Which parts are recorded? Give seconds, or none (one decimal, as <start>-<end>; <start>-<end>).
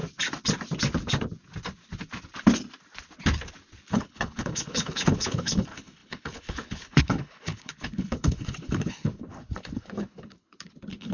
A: 0.0-3.9